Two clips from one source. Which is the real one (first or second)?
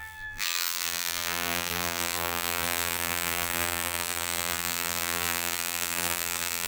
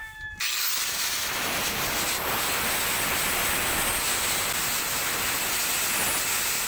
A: second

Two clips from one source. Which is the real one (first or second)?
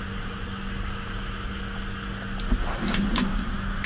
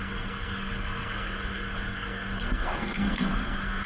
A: first